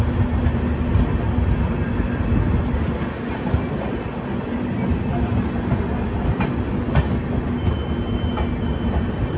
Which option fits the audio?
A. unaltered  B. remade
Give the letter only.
A